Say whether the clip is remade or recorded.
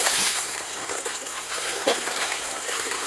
remade